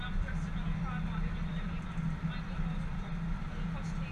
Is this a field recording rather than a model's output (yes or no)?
yes